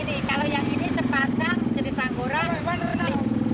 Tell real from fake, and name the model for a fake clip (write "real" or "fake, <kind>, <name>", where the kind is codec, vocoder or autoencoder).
fake, vocoder, BigVGAN v2